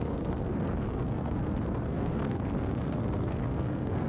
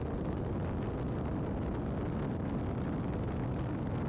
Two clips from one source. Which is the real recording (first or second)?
second